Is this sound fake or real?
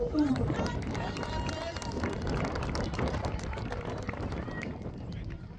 fake